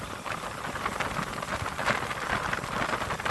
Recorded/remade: recorded